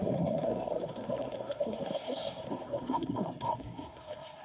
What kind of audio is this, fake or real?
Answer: fake